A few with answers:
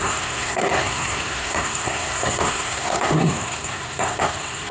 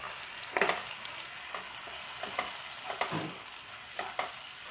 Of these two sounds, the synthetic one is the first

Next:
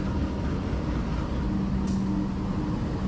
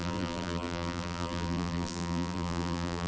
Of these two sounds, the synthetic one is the second